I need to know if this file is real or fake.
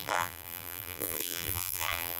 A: fake